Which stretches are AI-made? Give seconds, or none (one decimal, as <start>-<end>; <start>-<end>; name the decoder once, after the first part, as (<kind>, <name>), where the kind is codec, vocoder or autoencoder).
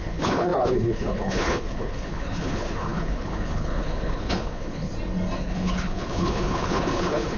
0.0-4.9 (codec, HILCodec); 5.4-7.4